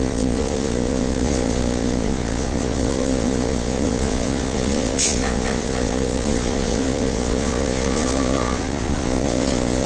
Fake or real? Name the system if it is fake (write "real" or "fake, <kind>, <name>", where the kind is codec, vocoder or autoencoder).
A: fake, vocoder, Vocos